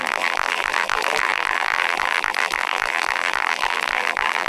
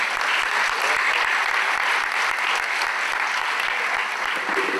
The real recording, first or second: second